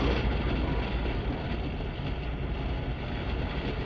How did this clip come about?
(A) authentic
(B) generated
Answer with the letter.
A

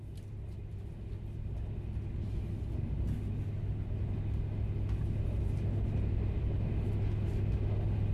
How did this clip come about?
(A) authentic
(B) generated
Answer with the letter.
A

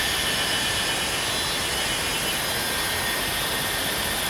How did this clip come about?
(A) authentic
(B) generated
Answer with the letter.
A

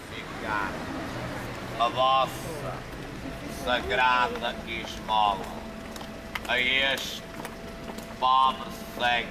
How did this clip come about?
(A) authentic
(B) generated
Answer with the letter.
A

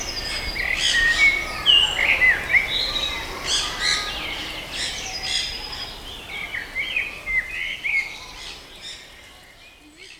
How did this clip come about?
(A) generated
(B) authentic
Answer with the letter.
B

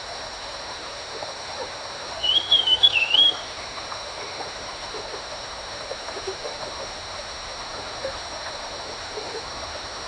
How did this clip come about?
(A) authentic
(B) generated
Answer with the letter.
B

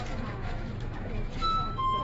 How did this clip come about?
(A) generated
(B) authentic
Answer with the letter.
A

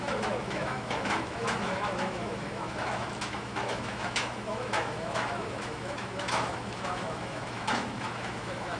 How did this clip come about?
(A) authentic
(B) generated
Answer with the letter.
B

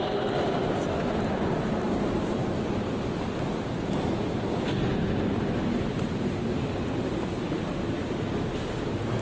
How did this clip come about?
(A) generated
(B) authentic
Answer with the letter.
B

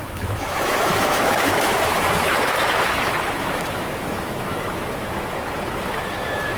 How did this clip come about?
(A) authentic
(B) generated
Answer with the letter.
B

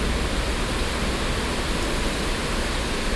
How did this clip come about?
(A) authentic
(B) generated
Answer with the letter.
A